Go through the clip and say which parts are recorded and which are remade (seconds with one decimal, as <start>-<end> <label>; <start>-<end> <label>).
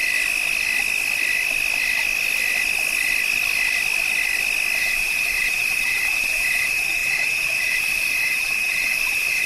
0.0-4.8 recorded; 4.8-9.5 remade